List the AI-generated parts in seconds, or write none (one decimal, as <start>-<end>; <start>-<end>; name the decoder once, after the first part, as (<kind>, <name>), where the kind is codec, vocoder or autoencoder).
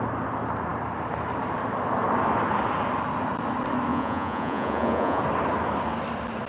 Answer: 3.9-5.2 (vocoder, Vocos)